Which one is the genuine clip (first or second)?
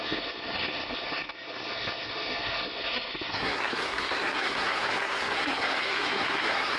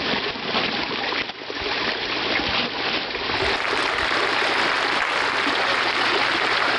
second